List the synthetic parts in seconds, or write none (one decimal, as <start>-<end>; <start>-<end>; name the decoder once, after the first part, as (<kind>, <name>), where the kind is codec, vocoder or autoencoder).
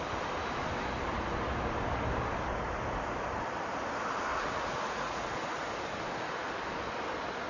4.3-5.3 (vocoder, Vocos)